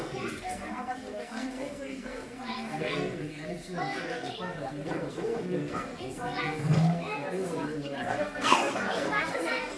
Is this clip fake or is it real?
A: fake